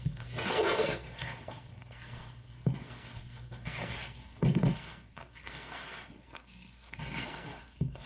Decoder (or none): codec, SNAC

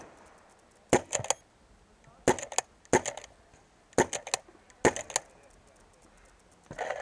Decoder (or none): none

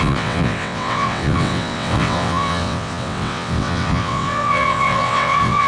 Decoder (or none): vocoder, WaveNeXt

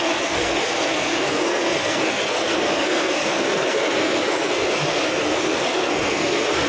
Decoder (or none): codec, SNAC